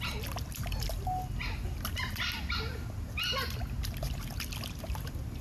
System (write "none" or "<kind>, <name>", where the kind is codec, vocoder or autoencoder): none